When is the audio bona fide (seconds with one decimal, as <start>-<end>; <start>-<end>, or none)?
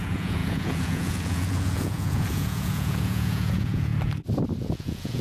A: 3.9-4.6